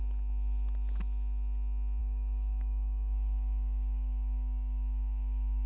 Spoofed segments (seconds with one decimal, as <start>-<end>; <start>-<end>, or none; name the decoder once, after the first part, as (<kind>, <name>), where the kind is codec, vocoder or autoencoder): 2.0-5.7 (codec, DAC)